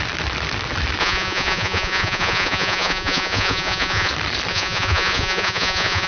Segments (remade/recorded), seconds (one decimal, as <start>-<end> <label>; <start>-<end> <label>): 0.0-1.0 recorded; 1.0-4.1 remade; 4.1-4.5 recorded; 4.5-6.1 remade